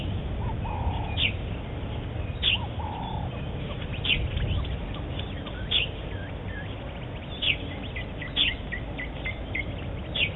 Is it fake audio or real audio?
real